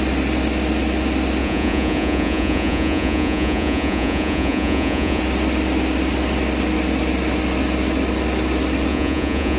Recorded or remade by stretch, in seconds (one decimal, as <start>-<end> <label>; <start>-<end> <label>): 0.0-1.4 recorded; 1.4-5.2 remade; 5.2-8.9 recorded; 8.9-9.6 remade